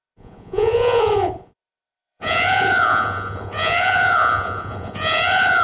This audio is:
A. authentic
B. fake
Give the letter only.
B